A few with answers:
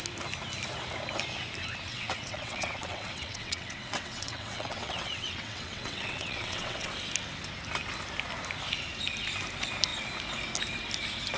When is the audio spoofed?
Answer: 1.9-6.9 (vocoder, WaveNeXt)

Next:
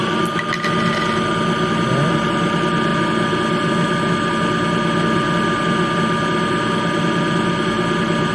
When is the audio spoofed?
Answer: none

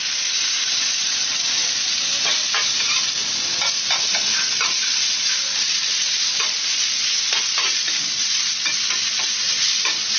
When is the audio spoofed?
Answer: none

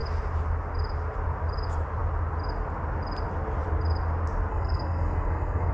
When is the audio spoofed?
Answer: 4.5-5.7 (codec, SNAC)